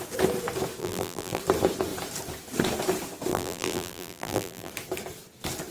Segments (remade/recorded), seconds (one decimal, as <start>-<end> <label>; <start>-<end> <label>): 0.0-0.8 recorded; 0.8-1.4 remade; 1.4-3.3 recorded; 3.3-4.7 remade; 4.7-5.7 recorded